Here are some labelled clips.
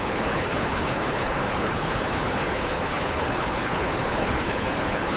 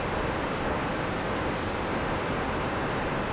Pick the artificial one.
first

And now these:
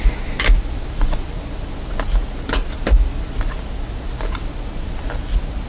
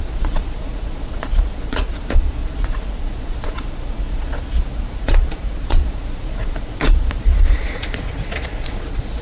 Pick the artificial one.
second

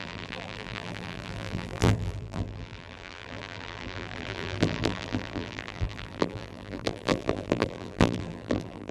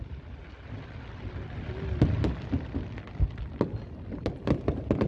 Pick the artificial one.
first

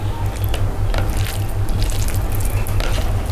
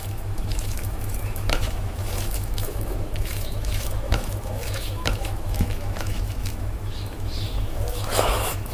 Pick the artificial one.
second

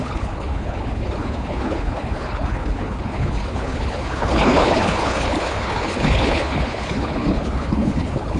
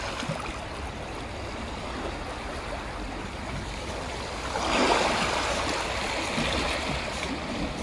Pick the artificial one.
first